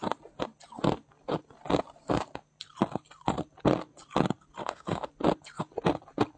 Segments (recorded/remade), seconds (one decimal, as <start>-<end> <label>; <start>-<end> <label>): 0.0-4.6 recorded; 4.6-5.1 remade; 5.1-6.4 recorded